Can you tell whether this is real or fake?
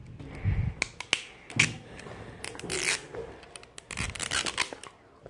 real